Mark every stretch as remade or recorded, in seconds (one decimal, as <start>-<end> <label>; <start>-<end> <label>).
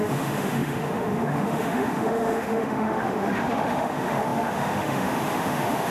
0.0-5.9 remade